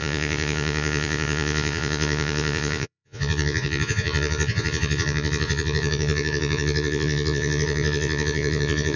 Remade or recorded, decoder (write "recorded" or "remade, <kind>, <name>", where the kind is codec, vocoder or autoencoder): remade, vocoder, Vocos